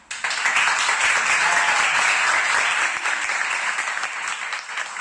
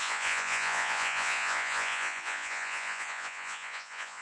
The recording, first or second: first